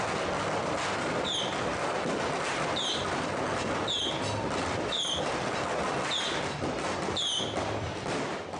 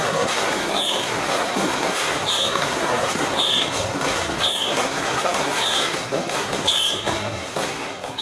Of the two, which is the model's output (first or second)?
second